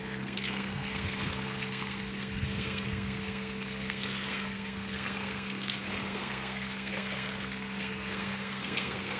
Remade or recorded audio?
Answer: remade